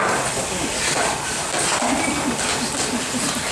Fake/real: real